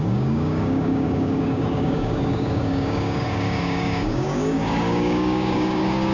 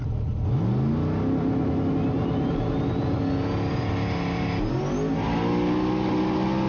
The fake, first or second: first